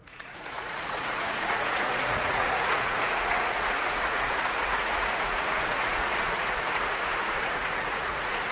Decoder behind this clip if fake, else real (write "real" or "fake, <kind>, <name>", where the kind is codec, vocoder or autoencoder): fake, vocoder, Vocos